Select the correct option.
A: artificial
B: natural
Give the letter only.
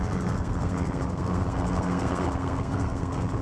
A